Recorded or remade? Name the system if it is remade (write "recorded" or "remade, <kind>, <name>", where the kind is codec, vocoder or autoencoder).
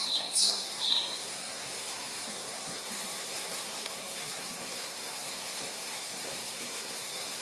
remade, codec, SNAC